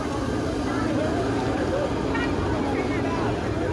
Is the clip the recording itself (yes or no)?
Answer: yes